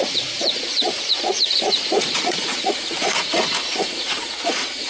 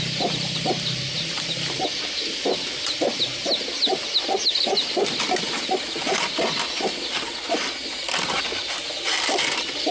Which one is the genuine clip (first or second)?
second